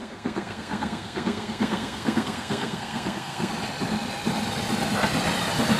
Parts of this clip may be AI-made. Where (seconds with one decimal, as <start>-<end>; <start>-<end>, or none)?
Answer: 0.0-3.5